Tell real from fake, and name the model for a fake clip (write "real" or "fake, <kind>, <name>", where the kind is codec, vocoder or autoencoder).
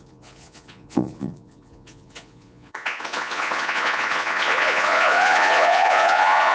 fake, vocoder, Vocos